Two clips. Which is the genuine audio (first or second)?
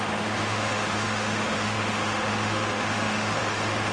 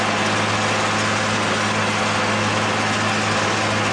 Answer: second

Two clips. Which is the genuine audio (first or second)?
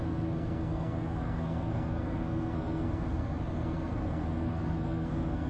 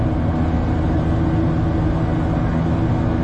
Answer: second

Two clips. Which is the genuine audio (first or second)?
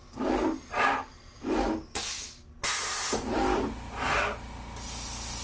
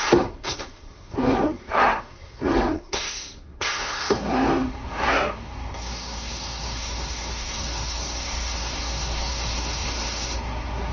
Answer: first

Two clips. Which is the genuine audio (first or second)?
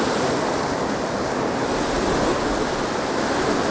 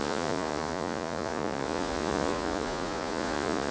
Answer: first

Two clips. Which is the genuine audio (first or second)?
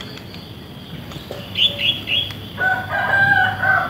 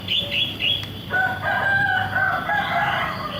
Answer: first